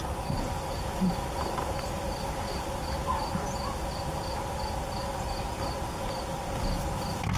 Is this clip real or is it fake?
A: real